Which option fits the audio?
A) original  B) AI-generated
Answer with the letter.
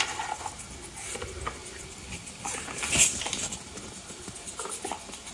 A